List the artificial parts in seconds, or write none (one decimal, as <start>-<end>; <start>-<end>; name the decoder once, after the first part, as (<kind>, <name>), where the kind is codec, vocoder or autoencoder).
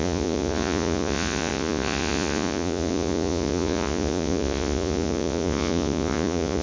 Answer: 0.0-6.6 (vocoder, Vocos)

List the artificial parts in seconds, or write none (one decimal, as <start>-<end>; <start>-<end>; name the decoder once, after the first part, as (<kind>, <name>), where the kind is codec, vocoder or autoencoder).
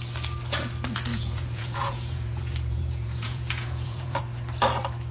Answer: 1.1-4.2 (vocoder, Vocos)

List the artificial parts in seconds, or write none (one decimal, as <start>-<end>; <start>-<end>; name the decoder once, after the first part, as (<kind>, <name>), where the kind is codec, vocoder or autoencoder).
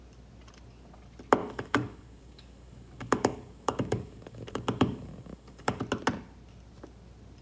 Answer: 1.4-5.8 (codec, DAC)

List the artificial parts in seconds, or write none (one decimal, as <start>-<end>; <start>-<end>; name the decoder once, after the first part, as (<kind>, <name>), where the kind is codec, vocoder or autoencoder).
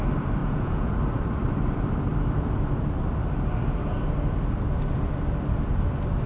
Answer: 0.4-0.9 (vocoder, Vocos)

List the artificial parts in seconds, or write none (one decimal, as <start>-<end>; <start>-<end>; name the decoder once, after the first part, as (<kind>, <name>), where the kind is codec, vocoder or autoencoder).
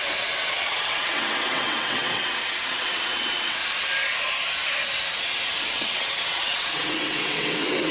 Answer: 0.0-3.6 (vocoder, WaveNeXt); 5.7-7.9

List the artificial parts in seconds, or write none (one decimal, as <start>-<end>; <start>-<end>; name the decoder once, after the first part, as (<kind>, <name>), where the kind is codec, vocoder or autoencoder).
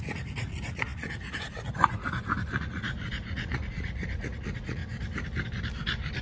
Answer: 0.0-4.8 (vocoder, Vocos)